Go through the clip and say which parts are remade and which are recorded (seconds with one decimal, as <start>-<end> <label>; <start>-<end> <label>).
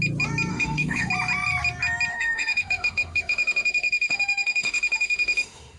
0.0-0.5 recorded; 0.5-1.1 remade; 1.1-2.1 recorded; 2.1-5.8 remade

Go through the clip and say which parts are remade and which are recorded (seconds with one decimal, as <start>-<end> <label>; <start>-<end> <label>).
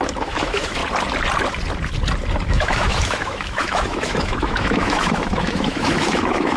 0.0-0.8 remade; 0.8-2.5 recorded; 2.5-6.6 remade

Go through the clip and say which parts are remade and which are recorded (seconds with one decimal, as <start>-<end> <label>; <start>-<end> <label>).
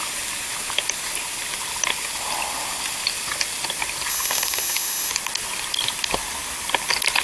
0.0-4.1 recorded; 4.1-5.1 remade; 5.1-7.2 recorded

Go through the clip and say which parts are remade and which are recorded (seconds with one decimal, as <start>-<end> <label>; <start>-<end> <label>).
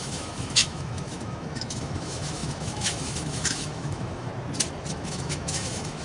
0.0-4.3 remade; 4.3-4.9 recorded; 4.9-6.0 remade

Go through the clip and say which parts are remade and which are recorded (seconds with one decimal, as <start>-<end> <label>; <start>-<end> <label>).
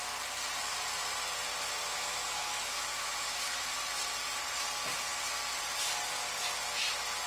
0.0-1.8 recorded; 1.8-3.7 remade; 3.7-7.3 recorded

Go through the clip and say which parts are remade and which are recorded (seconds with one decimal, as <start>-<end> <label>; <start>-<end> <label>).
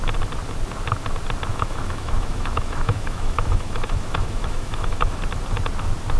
0.0-1.5 recorded; 1.5-5.2 remade; 5.2-6.2 recorded